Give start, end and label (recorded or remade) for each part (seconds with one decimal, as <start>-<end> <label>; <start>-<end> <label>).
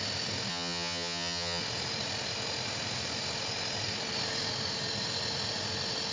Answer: 0.0-0.5 recorded; 0.5-1.6 remade; 1.6-6.1 recorded